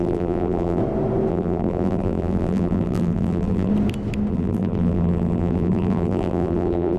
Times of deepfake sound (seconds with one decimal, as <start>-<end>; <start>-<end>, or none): 0.0-0.8; 1.3-3.7; 4.3-7.0